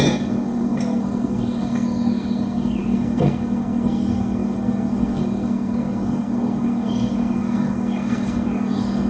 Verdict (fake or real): fake